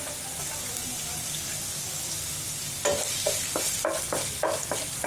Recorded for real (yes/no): yes